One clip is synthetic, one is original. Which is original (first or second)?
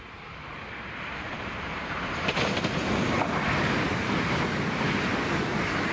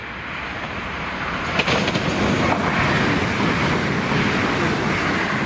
second